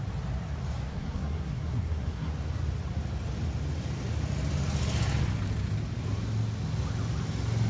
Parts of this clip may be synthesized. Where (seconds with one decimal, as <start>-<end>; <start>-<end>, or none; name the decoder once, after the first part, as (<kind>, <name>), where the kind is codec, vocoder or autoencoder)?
0.9-2.3 (codec, SNAC)